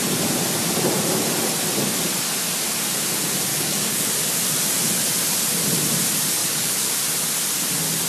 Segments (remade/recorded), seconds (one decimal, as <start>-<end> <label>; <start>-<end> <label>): 0.0-3.5 recorded; 3.5-4.1 remade; 4.1-6.4 recorded; 6.4-6.9 remade; 6.9-8.1 recorded